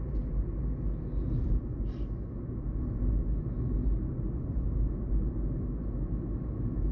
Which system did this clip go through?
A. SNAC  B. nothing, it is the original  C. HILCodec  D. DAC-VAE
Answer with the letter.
B